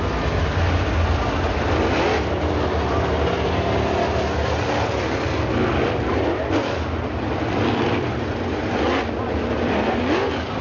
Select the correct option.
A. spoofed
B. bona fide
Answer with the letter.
B